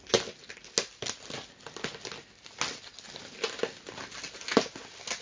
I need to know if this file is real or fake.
real